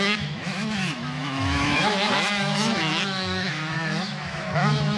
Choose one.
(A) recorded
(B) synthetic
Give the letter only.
B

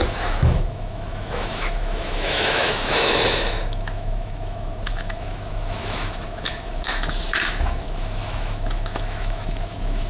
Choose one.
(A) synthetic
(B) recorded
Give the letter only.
A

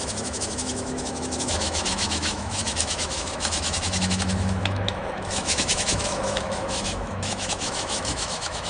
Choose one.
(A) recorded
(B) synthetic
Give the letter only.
B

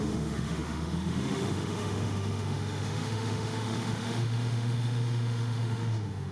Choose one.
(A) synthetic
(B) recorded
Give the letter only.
A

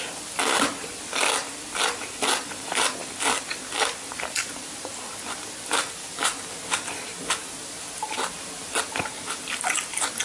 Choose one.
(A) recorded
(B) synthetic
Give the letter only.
A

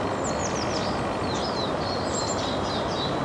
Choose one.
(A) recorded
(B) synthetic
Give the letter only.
A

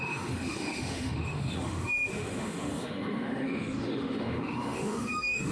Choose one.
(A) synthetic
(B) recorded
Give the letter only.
A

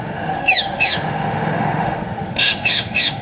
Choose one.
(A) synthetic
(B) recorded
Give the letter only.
A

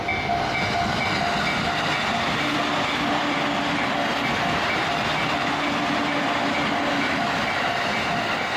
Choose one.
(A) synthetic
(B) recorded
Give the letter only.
B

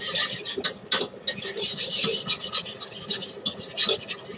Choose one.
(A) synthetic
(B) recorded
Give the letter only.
B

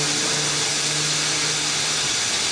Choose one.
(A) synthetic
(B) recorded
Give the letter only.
B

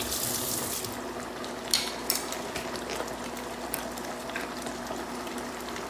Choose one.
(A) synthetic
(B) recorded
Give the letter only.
B